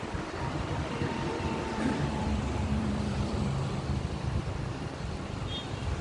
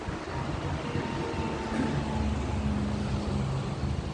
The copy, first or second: first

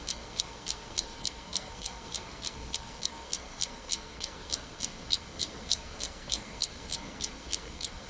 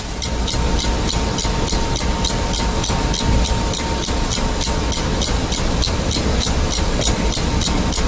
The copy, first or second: first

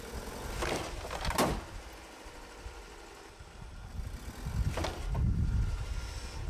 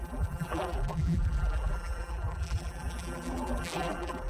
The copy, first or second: second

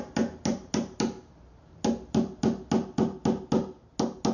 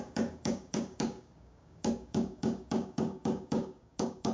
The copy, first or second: second